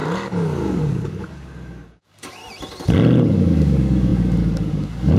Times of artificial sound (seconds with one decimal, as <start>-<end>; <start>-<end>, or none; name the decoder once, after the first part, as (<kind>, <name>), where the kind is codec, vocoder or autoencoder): 0.0-2.4 (codec, DAC); 3.2-5.2